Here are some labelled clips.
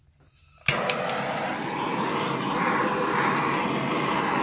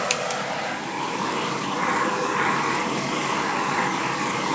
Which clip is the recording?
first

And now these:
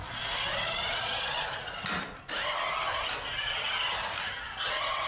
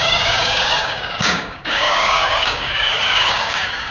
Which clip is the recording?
first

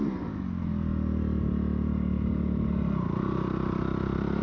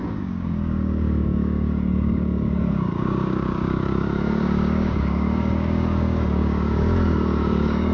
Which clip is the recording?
first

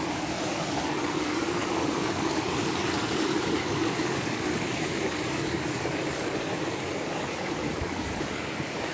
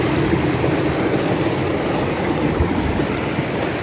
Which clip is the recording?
second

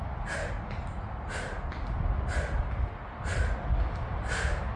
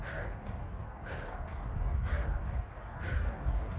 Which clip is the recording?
first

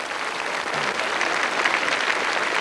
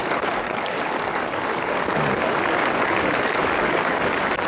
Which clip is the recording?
first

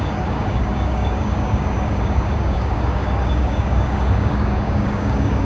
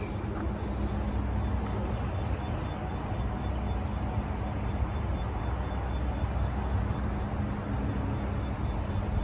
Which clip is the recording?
second